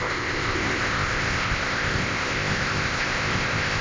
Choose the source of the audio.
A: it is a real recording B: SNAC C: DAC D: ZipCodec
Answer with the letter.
D